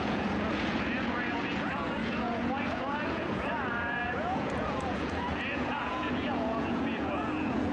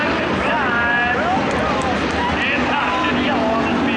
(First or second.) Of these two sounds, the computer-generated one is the first